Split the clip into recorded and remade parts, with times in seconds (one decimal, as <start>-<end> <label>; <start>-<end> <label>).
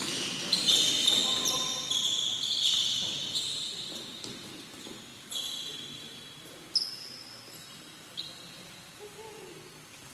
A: 0.0-10.1 recorded